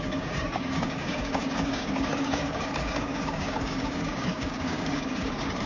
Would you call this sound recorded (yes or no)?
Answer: no